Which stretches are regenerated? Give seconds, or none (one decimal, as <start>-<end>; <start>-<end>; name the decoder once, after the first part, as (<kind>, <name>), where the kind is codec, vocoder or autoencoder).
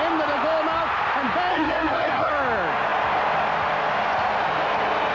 1.5-2.3 (codec, SNAC)